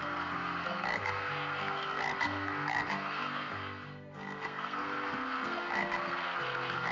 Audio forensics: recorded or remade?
remade